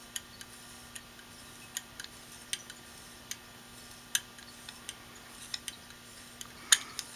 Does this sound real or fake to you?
real